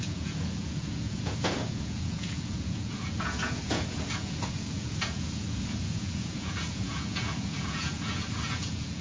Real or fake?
fake